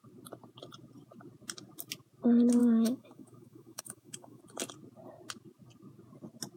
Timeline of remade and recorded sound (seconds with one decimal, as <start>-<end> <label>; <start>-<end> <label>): 0.0-2.6 recorded; 2.6-4.4 remade; 4.4-6.6 recorded